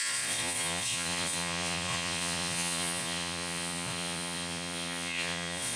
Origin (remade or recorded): remade